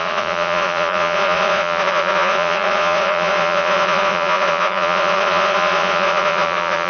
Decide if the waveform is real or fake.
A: fake